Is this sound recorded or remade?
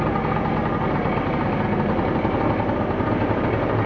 recorded